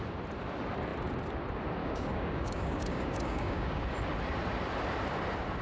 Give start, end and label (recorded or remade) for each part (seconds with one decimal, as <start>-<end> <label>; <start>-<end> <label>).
0.0-1.8 recorded; 1.8-3.8 remade; 3.8-5.6 recorded

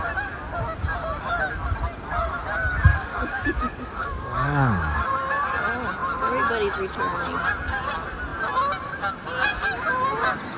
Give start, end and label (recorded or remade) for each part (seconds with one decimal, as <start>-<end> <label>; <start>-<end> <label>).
0.0-2.9 recorded; 2.9-5.0 remade; 5.0-10.6 recorded

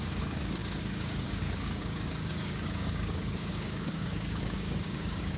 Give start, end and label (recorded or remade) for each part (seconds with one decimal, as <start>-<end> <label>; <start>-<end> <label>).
0.0-5.4 remade

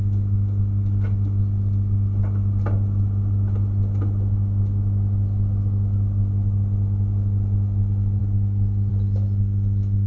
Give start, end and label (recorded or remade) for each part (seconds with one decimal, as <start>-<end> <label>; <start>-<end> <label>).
0.0-10.1 recorded

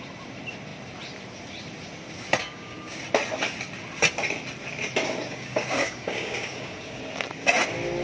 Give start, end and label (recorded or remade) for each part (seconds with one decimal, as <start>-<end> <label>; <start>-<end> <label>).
0.0-2.4 recorded; 2.4-3.0 remade; 3.0-5.3 recorded; 5.3-7.0 remade; 7.0-8.0 recorded